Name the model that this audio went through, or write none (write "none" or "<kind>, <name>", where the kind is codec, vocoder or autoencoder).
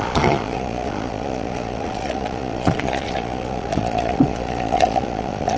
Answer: vocoder, Vocos